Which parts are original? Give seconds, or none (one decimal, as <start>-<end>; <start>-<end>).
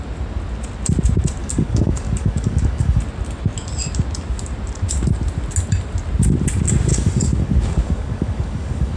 0.0-1.4; 3.0-6.9